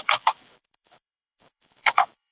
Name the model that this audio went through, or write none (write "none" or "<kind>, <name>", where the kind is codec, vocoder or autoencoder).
codec, DAC